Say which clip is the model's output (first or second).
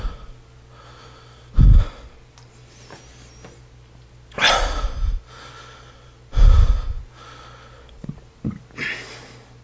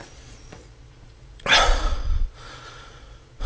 second